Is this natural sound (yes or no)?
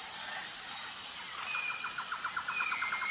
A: yes